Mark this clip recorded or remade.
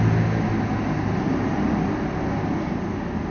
recorded